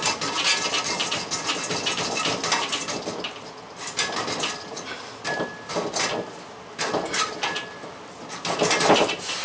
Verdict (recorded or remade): recorded